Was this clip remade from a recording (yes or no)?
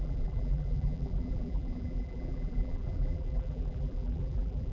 yes